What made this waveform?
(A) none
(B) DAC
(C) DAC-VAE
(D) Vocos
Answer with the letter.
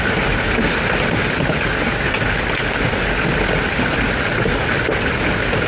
A